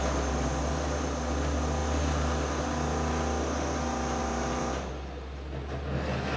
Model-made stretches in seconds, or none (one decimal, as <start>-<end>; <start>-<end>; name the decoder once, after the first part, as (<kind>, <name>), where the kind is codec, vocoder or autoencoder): 4.2-4.9 (vocoder, BigVGAN v2)